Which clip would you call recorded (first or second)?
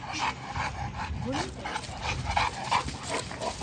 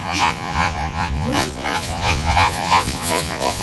first